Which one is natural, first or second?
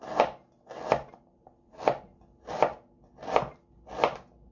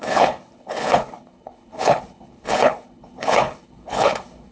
first